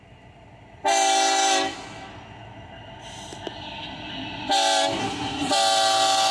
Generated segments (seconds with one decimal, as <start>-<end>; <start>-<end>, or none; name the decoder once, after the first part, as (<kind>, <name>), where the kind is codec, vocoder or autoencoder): 5.0-5.5 (codec, SNAC)